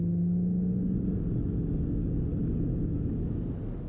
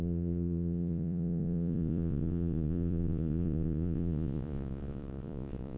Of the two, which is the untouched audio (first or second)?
first